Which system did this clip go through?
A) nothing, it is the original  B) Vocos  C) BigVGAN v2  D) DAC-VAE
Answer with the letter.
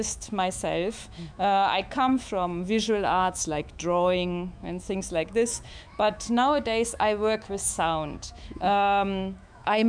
D